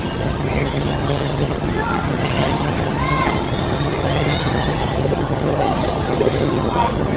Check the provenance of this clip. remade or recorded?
remade